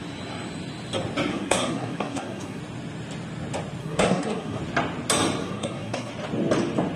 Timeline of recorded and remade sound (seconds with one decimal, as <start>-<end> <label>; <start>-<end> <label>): 0.0-1.3 recorded; 1.3-2.6 remade; 2.6-3.8 recorded; 3.8-4.6 remade; 4.6-5.4 recorded; 5.4-6.1 remade; 6.1-7.0 recorded